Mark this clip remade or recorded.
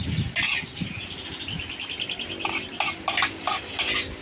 recorded